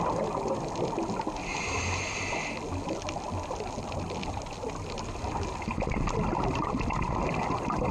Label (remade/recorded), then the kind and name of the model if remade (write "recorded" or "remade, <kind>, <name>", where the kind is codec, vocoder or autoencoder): recorded